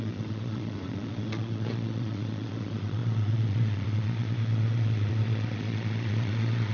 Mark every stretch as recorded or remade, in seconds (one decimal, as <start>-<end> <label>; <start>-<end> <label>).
0.0-6.7 remade